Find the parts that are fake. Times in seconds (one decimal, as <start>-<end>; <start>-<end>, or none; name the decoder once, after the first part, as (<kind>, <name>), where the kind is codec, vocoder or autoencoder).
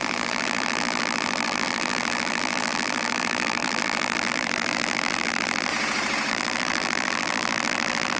0.0-5.7 (vocoder, BigVGAN v2); 6.3-8.2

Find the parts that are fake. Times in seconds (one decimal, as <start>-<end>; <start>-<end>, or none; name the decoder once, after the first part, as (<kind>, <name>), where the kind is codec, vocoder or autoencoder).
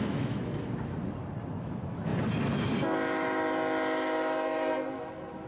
0.0-0.5 (autoencoder, DAC-VAE); 1.6-2.1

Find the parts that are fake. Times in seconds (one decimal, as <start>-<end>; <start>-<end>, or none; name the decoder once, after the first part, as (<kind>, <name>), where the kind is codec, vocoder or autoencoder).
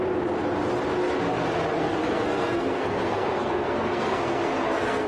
1.7-5.1 (codec, SNAC)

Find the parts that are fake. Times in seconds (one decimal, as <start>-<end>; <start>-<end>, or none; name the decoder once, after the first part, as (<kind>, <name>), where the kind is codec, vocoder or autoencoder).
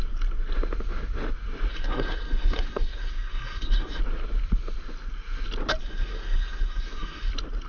1.7-4.0 (codec, SNAC); 5.8-7.3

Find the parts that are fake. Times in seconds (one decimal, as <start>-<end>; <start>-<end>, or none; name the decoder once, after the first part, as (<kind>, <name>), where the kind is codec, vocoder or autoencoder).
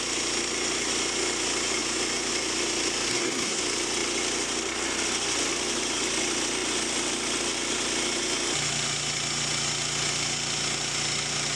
3.1-3.6 (codec, SNAC)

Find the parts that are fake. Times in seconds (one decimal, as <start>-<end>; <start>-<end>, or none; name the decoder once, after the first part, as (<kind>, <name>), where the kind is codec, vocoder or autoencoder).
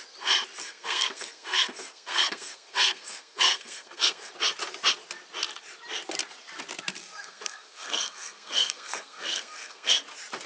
0.6-4.3 (codec, SNAC); 7.0-9.9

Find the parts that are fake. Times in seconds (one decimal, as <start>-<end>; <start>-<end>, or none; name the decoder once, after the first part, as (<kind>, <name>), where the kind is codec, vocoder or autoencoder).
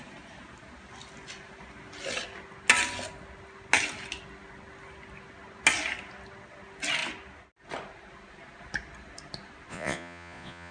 9.7-10.7 (vocoder, Vocos)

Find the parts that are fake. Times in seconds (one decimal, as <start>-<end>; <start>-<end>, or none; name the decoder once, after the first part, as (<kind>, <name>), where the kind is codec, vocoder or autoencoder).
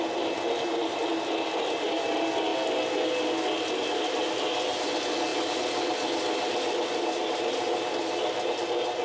none